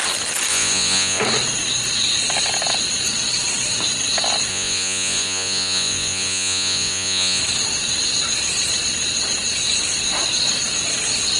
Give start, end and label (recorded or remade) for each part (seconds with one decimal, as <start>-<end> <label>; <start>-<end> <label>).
0.0-0.5 recorded; 0.5-1.2 remade; 1.2-4.5 recorded; 4.5-7.4 remade; 7.4-11.4 recorded